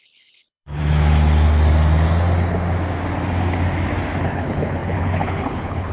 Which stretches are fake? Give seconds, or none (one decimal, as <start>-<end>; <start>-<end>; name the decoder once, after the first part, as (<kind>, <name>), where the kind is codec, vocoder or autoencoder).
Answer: 0.0-0.8 (codec, HILCodec); 4.2-5.9